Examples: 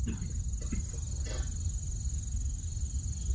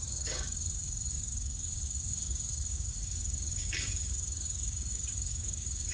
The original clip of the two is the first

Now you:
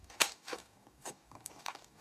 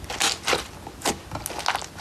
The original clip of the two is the second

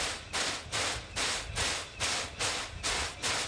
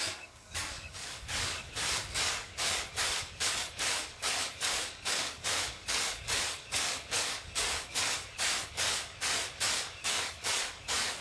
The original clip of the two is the first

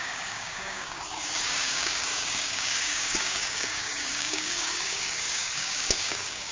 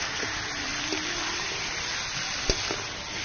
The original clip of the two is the second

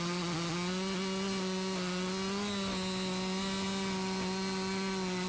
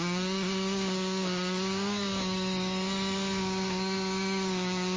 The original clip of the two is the first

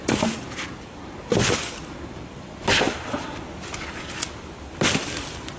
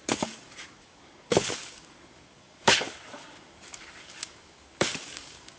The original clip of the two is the first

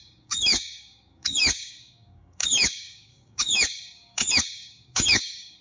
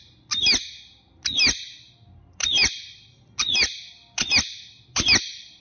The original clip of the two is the second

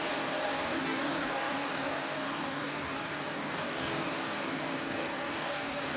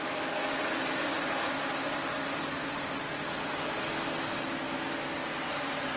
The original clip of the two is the second